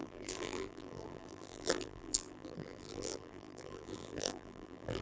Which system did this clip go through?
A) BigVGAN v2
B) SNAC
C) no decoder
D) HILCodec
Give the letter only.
A